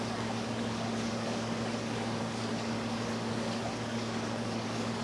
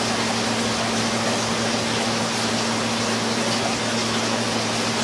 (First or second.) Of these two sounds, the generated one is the first